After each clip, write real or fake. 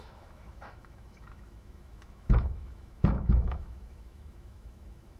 fake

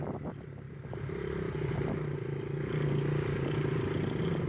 real